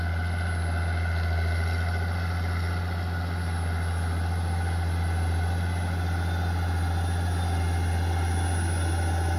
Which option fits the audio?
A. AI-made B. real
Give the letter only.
B